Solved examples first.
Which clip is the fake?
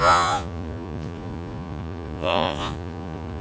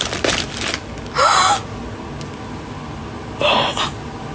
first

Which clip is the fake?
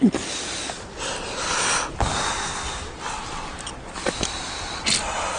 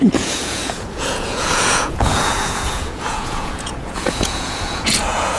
second